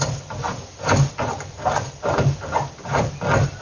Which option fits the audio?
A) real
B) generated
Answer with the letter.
A